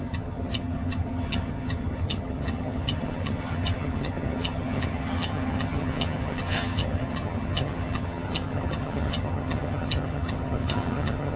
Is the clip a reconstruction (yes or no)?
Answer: yes